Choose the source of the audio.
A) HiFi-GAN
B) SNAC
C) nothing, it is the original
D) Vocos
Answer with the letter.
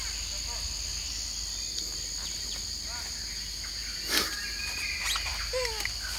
C